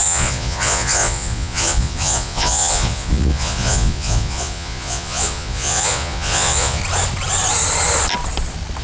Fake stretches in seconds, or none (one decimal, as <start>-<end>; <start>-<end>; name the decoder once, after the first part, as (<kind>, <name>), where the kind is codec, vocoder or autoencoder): 0.0-6.8 (vocoder, Vocos)